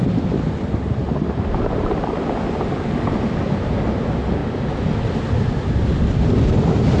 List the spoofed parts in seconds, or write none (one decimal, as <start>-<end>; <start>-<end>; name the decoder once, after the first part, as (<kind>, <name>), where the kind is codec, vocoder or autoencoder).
none